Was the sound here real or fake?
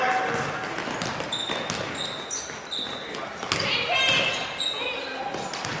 real